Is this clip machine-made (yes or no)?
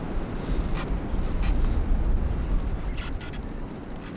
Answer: no